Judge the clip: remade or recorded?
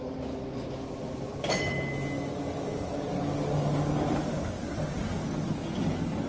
recorded